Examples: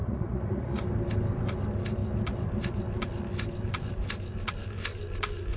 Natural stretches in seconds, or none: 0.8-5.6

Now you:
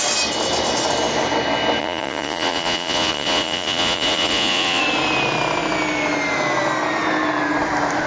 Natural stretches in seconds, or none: 0.0-1.8; 4.8-8.1

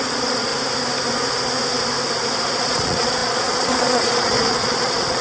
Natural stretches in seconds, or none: 0.5-2.5